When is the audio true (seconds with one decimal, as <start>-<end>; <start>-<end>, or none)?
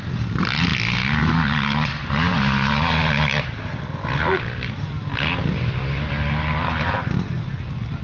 0.0-8.0